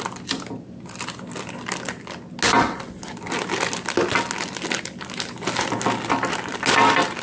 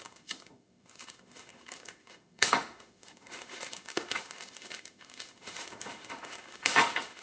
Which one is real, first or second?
first